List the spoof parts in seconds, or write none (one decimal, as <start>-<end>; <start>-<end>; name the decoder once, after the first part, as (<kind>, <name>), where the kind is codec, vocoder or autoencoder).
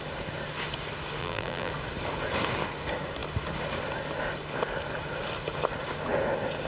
1.2-1.7 (vocoder, BigVGAN v2)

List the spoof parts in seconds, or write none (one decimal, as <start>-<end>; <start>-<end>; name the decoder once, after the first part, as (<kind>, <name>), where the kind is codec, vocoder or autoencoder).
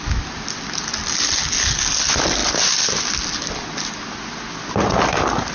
none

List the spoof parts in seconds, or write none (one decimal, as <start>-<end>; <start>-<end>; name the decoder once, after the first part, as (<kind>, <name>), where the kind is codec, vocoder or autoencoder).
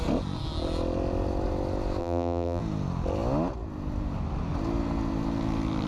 2.0-2.6 (vocoder, BigVGAN v2)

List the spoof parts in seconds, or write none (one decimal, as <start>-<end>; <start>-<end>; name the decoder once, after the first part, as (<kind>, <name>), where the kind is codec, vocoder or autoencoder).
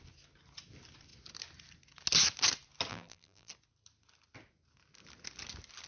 2.9-3.5 (vocoder, BigVGAN v2)